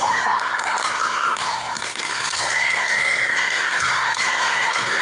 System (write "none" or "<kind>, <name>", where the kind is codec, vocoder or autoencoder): codec, SNAC